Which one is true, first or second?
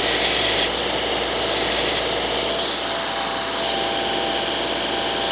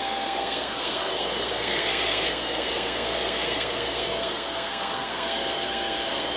first